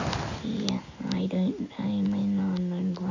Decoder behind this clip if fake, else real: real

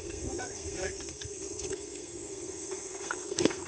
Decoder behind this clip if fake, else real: fake, codec, SNAC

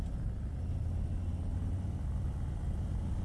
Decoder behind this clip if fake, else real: real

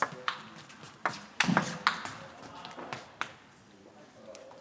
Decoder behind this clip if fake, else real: real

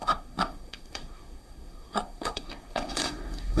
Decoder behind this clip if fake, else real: fake, codec, SNAC